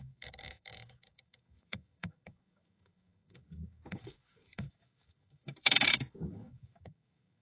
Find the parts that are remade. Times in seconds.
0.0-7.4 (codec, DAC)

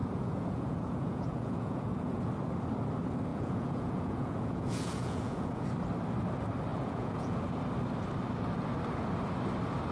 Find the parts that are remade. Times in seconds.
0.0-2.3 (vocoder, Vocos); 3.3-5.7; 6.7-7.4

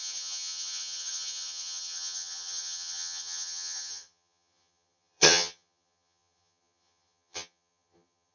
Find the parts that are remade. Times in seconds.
0.0-8.3 (vocoder, HiFi-GAN)